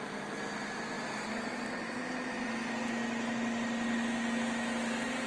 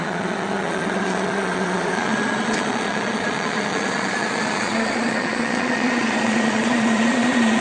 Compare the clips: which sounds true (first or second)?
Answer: first